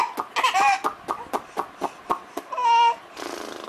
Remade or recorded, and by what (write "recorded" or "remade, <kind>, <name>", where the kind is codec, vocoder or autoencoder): recorded